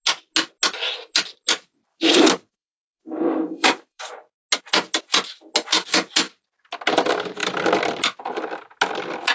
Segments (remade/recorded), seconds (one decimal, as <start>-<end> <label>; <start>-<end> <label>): 0.0-1.9 recorded; 1.9-4.1 remade; 4.1-9.3 recorded